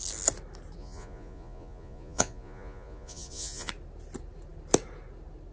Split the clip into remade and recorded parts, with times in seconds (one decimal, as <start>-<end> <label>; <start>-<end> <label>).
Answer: 0.0-0.8 recorded; 0.8-3.7 remade; 3.7-5.5 recorded